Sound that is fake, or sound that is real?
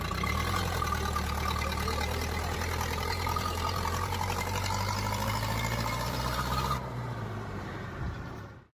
fake